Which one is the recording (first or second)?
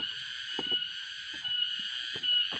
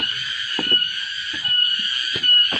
first